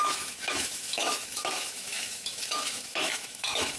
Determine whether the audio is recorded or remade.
remade